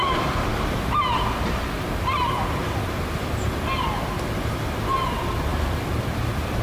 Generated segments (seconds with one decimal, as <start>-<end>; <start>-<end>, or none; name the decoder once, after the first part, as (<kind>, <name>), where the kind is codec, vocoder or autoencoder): 2.6-3.5 (vocoder, BigVGAN v2); 5.5-6.6